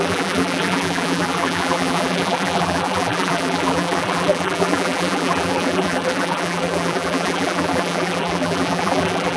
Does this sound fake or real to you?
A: fake